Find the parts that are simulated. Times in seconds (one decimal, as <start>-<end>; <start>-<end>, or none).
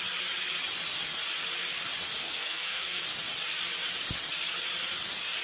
2.2-3.0